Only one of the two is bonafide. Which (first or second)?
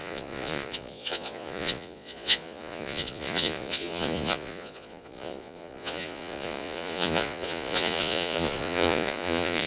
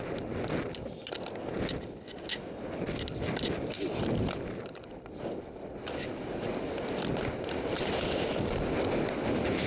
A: second